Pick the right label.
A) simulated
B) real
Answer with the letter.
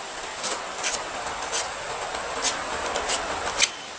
B